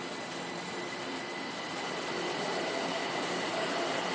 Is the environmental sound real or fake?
fake